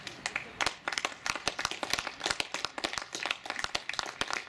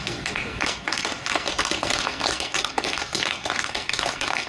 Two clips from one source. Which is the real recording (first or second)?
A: first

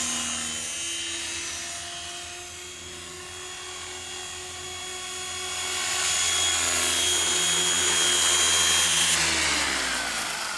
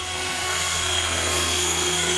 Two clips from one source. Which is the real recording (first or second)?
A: first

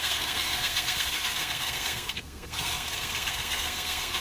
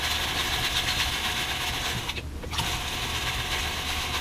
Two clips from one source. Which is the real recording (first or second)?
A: second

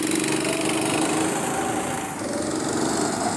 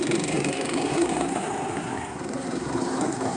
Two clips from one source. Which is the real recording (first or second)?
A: first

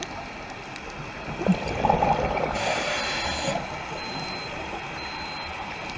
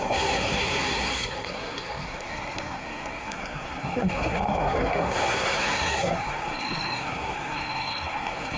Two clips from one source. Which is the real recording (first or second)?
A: first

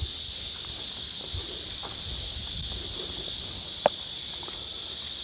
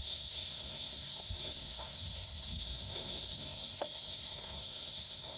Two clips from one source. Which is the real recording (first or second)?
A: first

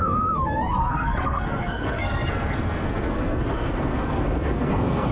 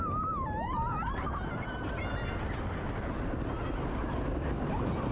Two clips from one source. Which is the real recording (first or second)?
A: second